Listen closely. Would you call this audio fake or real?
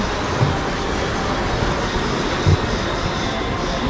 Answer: real